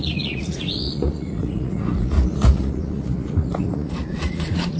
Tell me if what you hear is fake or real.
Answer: fake